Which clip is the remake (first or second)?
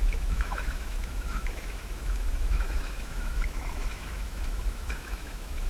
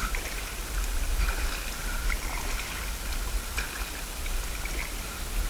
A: first